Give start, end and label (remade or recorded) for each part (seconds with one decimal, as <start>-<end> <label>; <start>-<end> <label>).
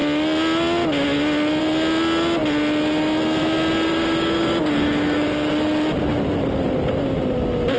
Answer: 0.0-3.9 recorded; 3.9-5.5 remade; 5.5-7.8 recorded